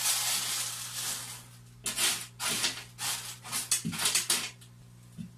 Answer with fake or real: real